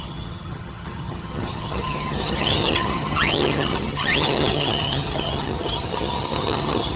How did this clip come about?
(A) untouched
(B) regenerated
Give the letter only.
B